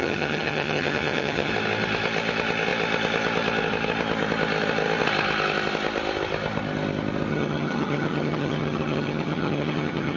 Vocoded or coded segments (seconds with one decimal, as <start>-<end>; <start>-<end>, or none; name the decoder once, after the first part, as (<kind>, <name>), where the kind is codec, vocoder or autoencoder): 0.0-1.5 (vocoder, HiFi-GAN); 7.3-10.2